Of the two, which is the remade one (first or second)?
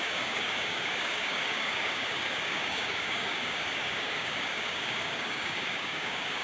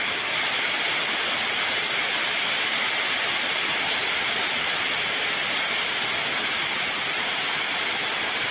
first